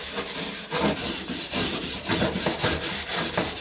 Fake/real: real